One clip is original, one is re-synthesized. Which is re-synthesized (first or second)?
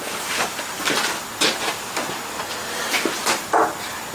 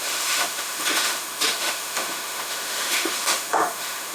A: second